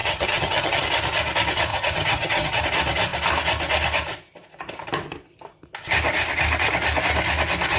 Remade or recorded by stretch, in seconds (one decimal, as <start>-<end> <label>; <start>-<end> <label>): 0.0-0.8 remade; 0.8-1.7 recorded; 1.7-2.6 remade; 2.6-7.8 recorded